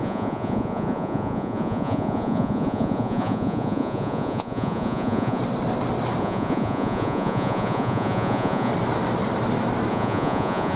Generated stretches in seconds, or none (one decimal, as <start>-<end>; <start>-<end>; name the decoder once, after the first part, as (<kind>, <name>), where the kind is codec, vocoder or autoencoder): 0.0-5.4 (vocoder, Vocos); 6.2-8.7; 9.9-10.8

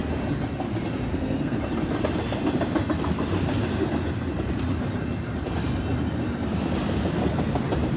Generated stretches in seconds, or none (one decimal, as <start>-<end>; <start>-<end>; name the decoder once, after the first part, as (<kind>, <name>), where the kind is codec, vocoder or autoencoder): 1.1-1.6 (codec, SNAC)

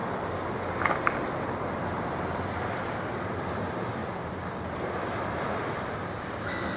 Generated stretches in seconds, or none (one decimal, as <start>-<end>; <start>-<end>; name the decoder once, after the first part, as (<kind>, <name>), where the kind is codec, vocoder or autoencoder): 4.0-5.5 (vocoder, BigVGAN v2)